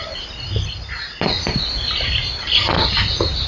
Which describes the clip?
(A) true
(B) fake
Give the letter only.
A